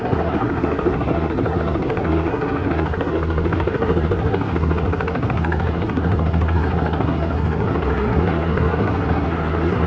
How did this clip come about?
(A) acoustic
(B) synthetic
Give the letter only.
B